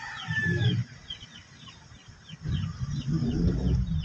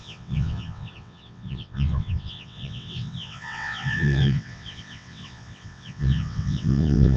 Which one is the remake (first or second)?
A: second